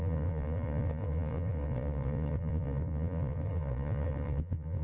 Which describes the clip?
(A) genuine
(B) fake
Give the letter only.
B